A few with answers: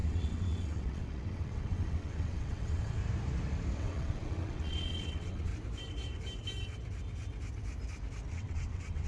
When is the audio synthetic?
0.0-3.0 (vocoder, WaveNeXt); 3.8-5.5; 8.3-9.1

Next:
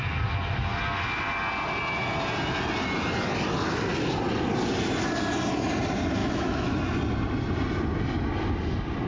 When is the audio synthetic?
6.2-6.8 (autoencoder, DAC-VAE)

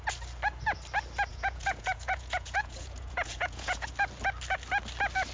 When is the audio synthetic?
1.3-3.9 (vocoder, Vocos)

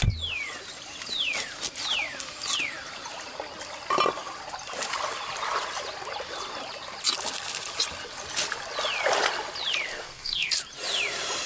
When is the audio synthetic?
9.9-10.5 (codec, SNAC)